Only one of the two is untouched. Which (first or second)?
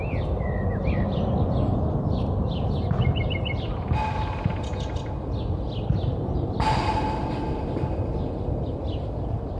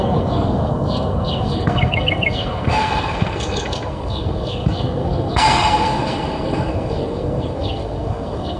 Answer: first